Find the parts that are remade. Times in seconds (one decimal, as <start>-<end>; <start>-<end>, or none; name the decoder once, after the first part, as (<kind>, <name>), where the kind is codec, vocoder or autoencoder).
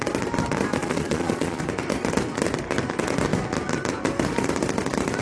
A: 0.8-1.6 (vocoder, Vocos)